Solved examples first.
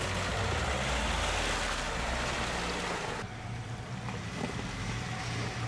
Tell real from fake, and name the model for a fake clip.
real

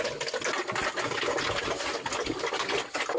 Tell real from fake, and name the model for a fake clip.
real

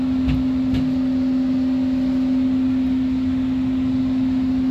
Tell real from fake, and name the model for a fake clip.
real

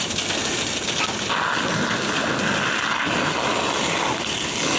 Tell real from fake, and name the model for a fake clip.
real